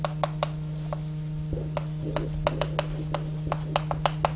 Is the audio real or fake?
real